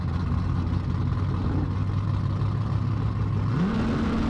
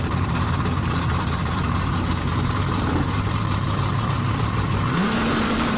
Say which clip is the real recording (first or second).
first